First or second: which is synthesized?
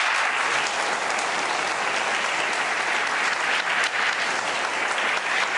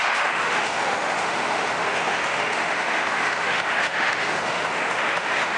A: second